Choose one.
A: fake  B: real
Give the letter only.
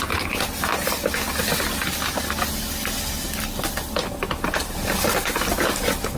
A